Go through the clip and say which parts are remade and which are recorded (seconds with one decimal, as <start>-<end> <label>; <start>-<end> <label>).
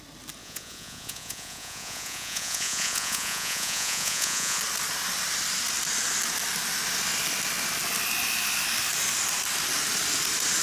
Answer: 0.0-0.4 recorded; 0.4-4.6 remade; 4.6-10.6 recorded